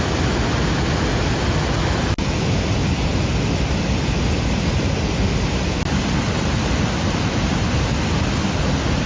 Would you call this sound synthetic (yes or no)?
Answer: no